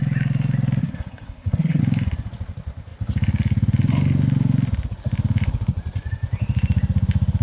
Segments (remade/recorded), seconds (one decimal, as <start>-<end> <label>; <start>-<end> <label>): 0.0-0.8 recorded; 0.8-1.8 remade; 1.8-7.4 recorded